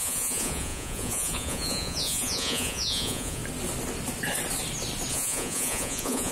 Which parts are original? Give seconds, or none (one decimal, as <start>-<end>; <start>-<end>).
3.4-5.1